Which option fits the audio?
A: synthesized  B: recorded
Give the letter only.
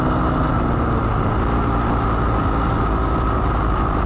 B